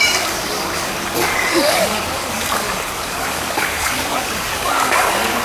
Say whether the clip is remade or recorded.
remade